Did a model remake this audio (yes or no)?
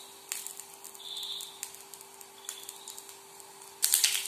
no